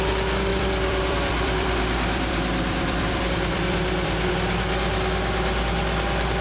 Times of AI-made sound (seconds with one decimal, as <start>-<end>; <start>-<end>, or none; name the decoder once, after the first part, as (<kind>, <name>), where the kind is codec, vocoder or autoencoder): 0.5-4.3 (vocoder, BigVGAN v2)

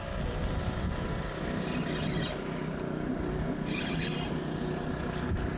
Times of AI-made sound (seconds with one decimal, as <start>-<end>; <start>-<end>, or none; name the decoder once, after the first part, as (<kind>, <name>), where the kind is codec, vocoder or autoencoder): 2.2-4.3 (vocoder, BigVGAN v2)

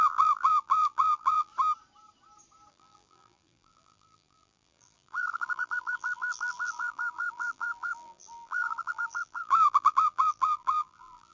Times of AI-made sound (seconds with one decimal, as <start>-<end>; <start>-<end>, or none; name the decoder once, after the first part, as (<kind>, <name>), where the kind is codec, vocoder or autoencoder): 0.0-1.5 (vocoder, BigVGAN v2); 2.7-11.3

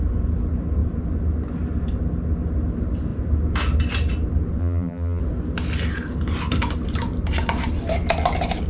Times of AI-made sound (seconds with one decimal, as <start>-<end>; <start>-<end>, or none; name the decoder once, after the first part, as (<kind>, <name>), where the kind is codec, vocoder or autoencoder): 4.6-5.2 (vocoder, BigVGAN v2)